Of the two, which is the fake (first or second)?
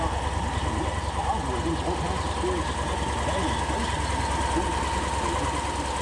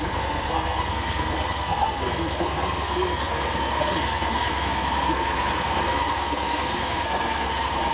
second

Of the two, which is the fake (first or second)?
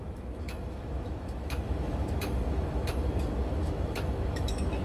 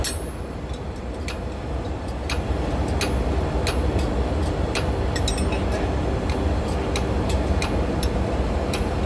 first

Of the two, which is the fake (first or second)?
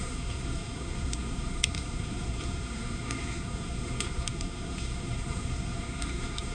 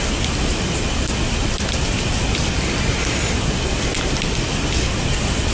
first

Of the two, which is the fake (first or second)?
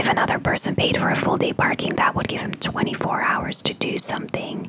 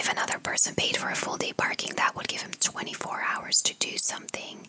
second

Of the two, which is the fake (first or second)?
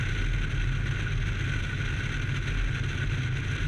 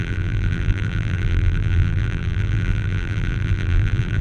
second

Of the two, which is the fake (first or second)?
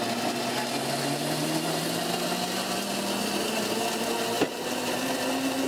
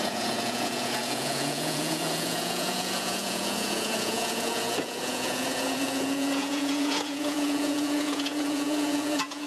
second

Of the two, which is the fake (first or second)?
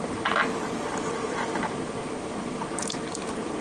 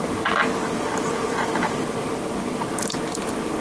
first